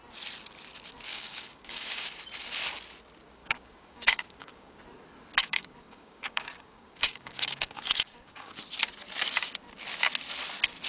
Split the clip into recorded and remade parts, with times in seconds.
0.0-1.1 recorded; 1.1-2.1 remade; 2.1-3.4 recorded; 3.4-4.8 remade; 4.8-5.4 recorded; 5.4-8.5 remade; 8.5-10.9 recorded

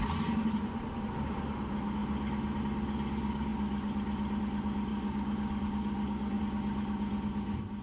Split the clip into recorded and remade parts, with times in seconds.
0.0-4.9 recorded; 4.9-6.4 remade; 6.4-7.8 recorded

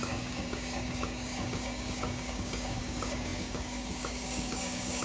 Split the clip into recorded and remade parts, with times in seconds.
0.0-5.0 remade

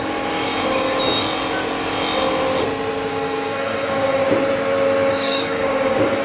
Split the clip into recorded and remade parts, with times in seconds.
0.0-0.5 remade; 0.5-3.1 recorded; 3.1-4.2 remade; 4.2-5.1 recorded; 5.1-6.2 remade

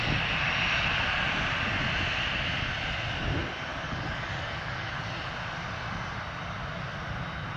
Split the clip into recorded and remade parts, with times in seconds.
0.0-3.7 recorded; 3.7-5.1 remade; 5.1-7.6 recorded

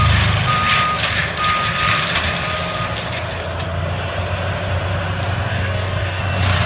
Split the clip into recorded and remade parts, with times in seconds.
0.0-5.5 recorded; 5.5-6.2 remade; 6.2-6.7 recorded